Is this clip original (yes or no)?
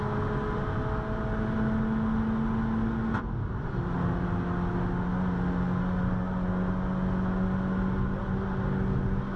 yes